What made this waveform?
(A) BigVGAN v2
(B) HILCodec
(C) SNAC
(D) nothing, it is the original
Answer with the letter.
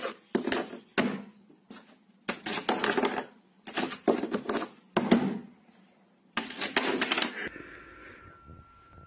D